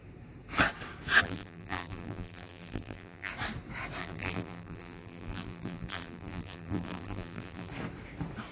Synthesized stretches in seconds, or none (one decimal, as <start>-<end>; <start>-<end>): 1.2-3.3; 4.0-7.7